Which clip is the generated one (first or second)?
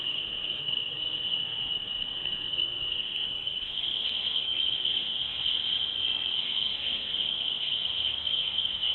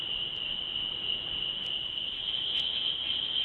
first